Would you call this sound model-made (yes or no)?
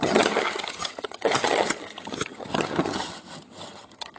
yes